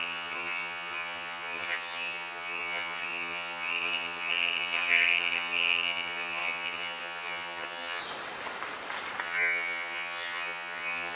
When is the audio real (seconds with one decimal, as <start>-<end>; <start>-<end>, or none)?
8.0-9.2